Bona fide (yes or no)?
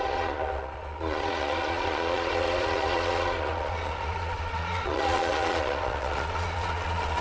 no